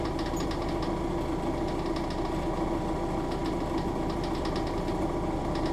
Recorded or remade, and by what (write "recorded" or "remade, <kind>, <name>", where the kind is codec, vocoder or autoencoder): recorded